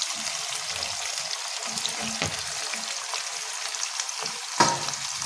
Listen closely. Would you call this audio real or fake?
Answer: real